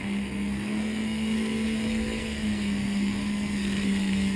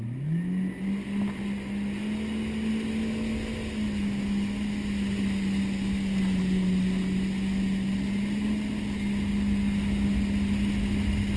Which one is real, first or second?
second